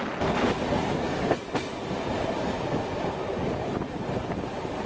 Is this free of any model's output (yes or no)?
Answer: yes